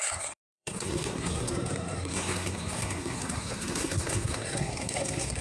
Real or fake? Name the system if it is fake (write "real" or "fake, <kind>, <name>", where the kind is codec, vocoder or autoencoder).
fake, codec, SNAC